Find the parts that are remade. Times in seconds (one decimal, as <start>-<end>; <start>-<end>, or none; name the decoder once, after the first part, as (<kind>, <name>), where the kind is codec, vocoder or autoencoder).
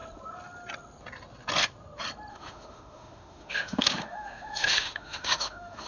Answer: 2.3-5.9 (autoencoder, DAC-VAE)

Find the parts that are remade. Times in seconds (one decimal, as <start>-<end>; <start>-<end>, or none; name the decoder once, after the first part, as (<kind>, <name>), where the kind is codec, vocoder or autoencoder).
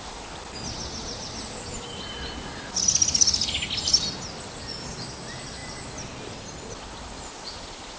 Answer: none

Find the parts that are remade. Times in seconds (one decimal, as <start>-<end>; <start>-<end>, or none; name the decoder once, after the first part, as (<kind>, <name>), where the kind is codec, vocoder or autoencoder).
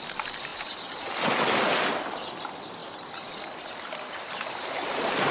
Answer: none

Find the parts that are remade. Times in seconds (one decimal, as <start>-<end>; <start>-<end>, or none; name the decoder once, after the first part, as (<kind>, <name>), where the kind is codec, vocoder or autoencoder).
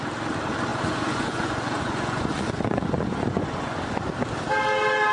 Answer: 0.7-3.8 (vocoder, Vocos)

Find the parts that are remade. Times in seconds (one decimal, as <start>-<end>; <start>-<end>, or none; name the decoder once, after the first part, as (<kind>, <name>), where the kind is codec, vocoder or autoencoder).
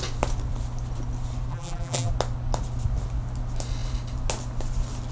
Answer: 1.5-2.1 (vocoder, BigVGAN v2)